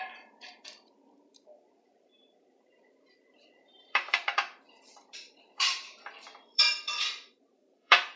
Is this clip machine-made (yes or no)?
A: yes